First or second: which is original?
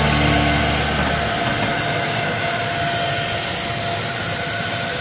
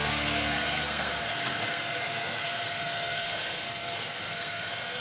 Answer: first